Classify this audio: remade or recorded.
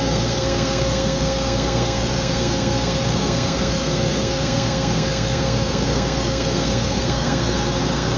remade